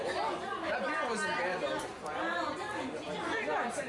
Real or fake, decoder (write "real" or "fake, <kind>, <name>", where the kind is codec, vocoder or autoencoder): real